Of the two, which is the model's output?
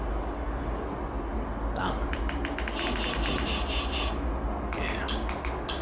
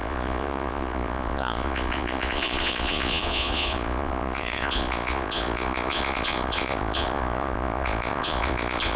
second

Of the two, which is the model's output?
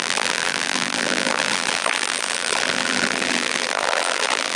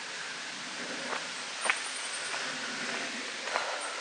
first